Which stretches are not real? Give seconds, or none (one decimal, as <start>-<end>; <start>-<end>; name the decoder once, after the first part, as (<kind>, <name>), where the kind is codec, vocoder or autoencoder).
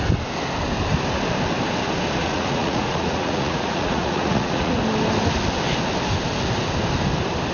2.2-4.8 (vocoder, Vocos)